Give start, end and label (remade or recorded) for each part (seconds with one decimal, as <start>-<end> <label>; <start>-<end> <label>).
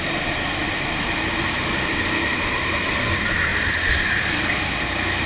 0.0-0.6 recorded; 0.6-1.4 remade; 1.4-5.3 recorded